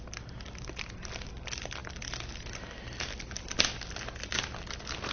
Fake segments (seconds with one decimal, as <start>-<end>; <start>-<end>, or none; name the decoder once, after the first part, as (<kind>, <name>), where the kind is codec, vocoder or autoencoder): none